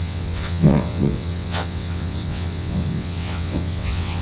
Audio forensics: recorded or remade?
remade